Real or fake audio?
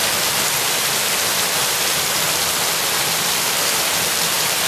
real